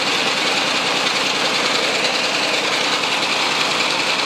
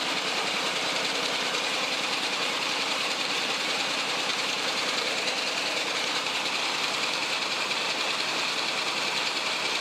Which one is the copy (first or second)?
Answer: second